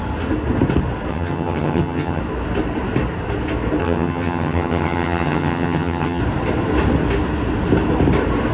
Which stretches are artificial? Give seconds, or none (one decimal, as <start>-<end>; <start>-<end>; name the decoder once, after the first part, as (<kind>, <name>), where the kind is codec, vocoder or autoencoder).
1.1-2.2 (vocoder, HiFi-GAN); 3.8-6.2